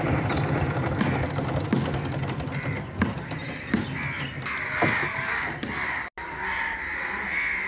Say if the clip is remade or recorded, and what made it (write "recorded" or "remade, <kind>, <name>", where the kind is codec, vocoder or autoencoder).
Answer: recorded